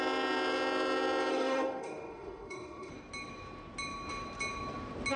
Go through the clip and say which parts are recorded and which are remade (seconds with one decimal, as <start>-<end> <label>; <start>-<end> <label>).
0.0-1.3 recorded; 1.3-2.9 remade; 2.9-5.2 recorded